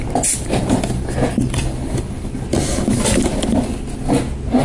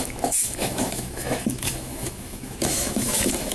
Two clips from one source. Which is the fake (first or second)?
second